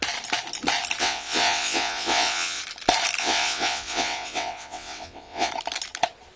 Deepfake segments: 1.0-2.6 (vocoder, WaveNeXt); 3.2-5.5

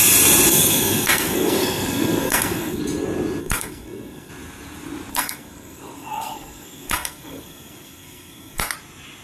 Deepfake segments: 0.5-2.8 (codec, SNAC); 3.4-4.3; 5.1-8.7

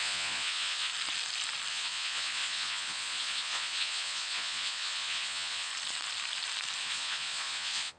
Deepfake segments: 0.0-0.9 (vocoder, Vocos); 1.7-5.7; 6.8-8.0

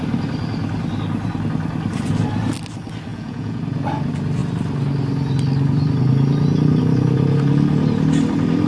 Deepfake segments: 3.1-3.6 (vocoder, Vocos)

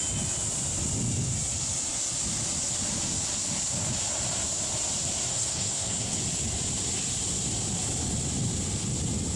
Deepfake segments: 5.3-6.2 (codec, SNAC)

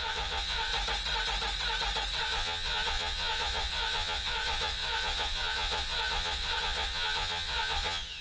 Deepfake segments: 0.0-0.7 (vocoder, Vocos); 2.2-8.2

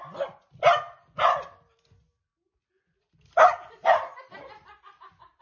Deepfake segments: none